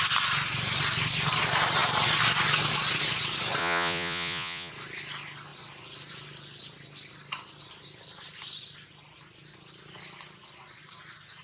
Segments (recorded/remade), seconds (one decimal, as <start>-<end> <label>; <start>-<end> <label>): 0.0-3.6 recorded; 3.6-4.7 remade; 4.7-11.4 recorded